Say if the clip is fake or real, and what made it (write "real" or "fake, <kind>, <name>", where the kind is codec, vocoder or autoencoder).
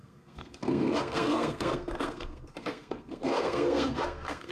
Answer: fake, codec, SNAC